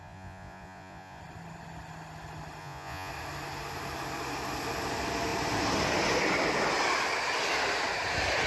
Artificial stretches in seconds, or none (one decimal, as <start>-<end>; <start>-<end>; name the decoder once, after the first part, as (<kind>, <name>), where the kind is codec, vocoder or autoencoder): 0.0-1.2 (vocoder, Vocos); 2.6-3.1